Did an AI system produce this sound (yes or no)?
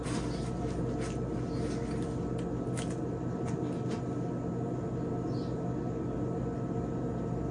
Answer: no